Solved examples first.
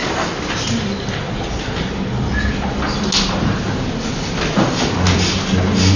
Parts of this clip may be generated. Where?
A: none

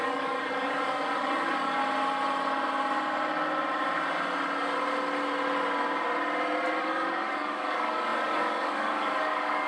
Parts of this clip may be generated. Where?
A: 0.0-1.8 (codec, DAC); 6.8-9.7